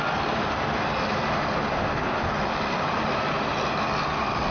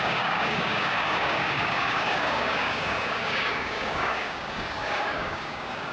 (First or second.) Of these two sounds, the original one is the first